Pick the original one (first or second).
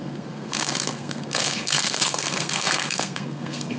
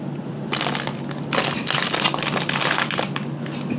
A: second